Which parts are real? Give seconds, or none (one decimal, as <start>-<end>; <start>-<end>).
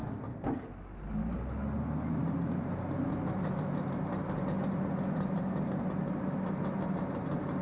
0.0-7.6